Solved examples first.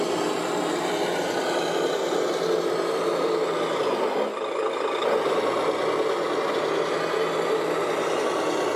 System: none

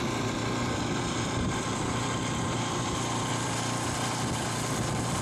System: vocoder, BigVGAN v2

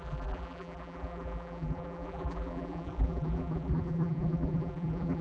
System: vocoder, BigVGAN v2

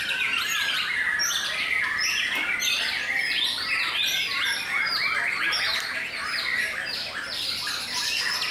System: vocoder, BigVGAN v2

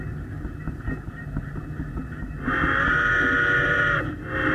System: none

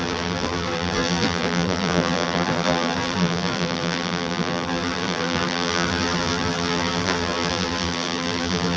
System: vocoder, BigVGAN v2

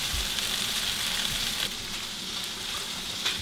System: vocoder, BigVGAN v2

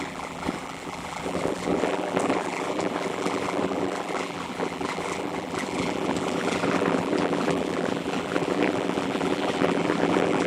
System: vocoder, BigVGAN v2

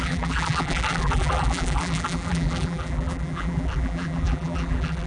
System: vocoder, BigVGAN v2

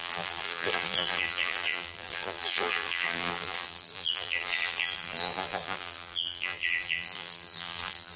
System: vocoder, BigVGAN v2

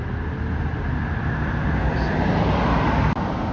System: none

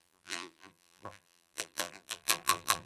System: vocoder, BigVGAN v2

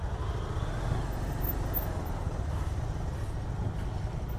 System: none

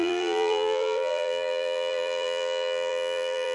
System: vocoder, BigVGAN v2